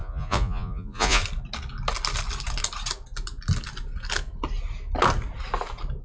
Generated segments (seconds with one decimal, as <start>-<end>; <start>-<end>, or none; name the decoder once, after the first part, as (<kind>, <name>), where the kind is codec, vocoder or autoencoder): 0.0-1.2 (vocoder, Vocos)